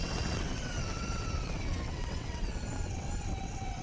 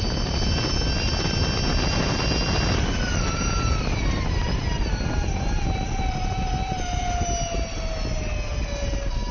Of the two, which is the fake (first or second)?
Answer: first